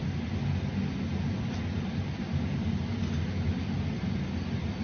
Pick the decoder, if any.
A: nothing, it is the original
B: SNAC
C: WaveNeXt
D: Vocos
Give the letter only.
A